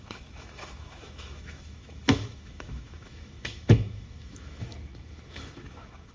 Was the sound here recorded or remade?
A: remade